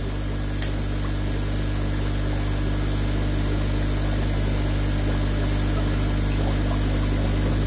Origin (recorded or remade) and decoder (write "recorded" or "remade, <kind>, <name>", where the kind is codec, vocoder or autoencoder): recorded